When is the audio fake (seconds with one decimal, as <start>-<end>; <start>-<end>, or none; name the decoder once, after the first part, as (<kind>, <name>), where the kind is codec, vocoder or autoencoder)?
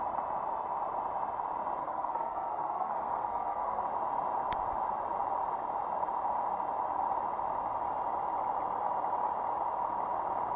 1.8-3.8 (codec, SNAC)